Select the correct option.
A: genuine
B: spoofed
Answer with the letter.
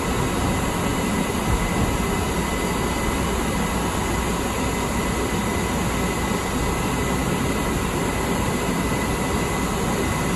A